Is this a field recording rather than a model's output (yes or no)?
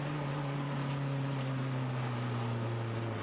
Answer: yes